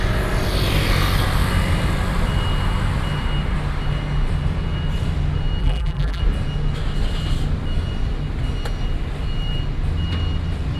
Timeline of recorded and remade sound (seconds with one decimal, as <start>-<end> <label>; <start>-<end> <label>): 0.0-5.6 recorded; 5.6-6.2 remade; 6.2-10.8 recorded